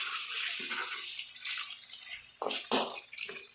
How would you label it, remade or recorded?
recorded